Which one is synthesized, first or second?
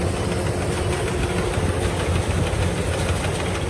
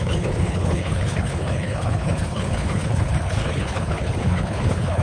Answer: second